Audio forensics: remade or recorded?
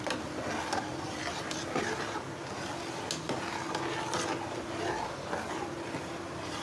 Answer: recorded